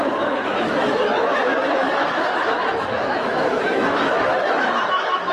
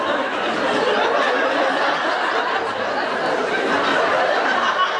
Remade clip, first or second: first